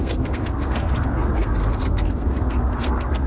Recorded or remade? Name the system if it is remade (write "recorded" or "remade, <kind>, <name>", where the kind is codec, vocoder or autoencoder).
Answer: remade, codec, SNAC